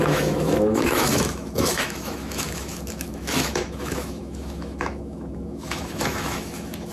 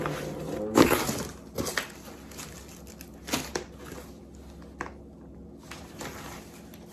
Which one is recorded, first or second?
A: second